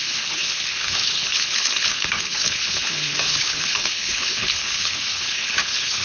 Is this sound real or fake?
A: fake